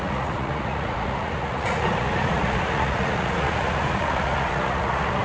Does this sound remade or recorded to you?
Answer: remade